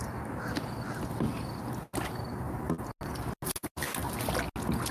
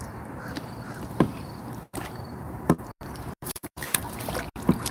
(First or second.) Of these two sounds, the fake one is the second